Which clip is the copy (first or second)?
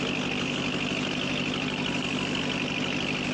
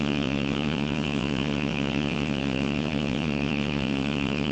second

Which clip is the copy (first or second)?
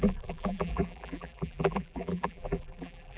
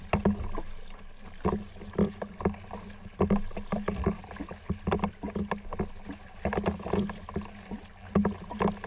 first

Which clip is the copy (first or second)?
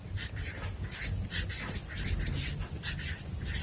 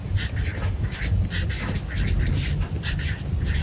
second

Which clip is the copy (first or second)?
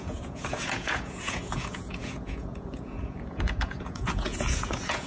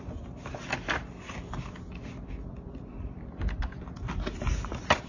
first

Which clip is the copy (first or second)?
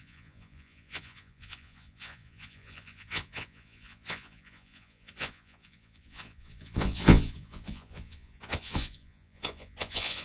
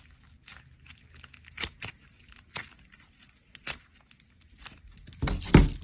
first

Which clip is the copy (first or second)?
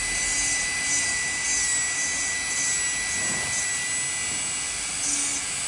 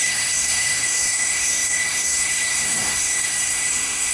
second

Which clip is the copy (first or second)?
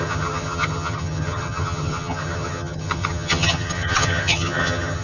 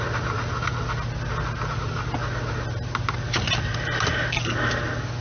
first